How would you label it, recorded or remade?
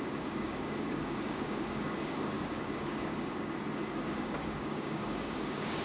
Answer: remade